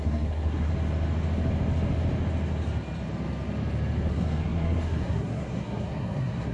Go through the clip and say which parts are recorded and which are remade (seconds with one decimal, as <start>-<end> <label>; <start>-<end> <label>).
0.0-0.7 remade; 0.7-4.1 recorded; 4.1-6.5 remade